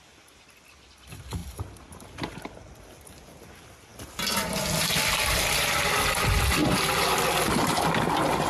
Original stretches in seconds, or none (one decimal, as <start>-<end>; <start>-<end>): 0.0-1.4; 2.3-6.6; 7.9-8.5